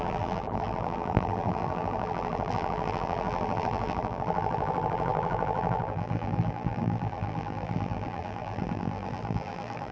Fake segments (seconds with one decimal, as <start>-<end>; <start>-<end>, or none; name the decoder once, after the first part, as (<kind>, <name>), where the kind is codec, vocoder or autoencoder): 0.0-9.9 (vocoder, BigVGAN v2)